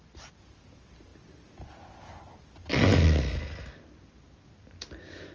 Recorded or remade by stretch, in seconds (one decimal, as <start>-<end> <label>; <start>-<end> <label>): 0.0-5.3 recorded